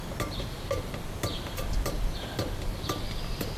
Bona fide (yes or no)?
no